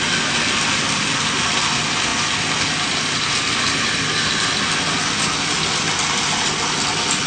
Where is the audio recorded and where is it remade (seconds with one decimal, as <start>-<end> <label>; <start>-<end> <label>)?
0.0-7.3 recorded

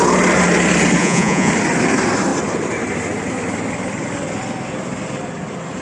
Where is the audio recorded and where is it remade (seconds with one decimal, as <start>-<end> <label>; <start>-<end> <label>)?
0.0-1.0 recorded; 1.0-1.5 remade; 1.5-5.8 recorded

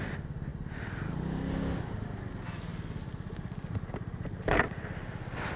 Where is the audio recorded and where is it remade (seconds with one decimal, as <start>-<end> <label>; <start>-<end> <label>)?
0.0-5.6 recorded

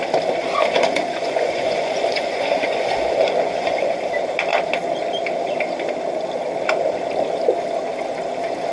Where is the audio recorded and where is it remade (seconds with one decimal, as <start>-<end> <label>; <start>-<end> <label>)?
0.0-0.6 recorded; 0.6-4.0 remade; 4.0-8.7 recorded

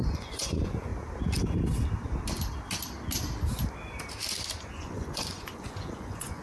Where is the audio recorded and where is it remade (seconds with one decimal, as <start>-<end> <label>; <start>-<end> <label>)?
0.0-0.9 remade; 0.9-4.7 recorded; 4.7-6.4 remade

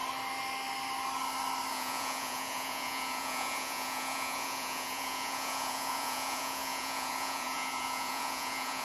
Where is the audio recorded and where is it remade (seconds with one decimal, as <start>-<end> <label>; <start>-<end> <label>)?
0.0-1.7 recorded; 1.7-8.8 remade